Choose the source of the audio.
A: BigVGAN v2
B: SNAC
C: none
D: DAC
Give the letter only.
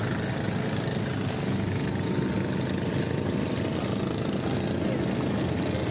C